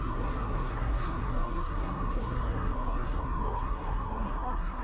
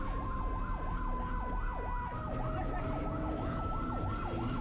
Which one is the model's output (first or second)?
first